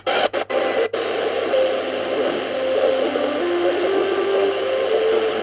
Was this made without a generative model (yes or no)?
yes